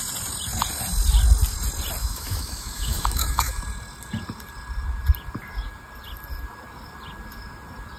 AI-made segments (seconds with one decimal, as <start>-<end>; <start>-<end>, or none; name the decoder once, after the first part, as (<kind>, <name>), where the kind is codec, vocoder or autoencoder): 2.0-3.6 (autoencoder, DAC-VAE)